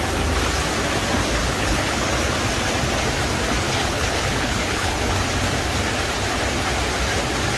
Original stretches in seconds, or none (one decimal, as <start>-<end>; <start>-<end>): 0.0-1.4; 2.1-3.8; 5.1-7.6